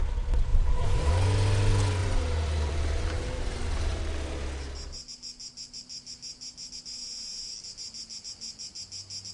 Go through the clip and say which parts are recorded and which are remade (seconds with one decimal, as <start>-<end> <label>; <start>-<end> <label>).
0.0-0.5 recorded; 0.5-1.1 remade; 1.1-2.0 recorded; 2.0-4.0 remade; 4.0-9.3 recorded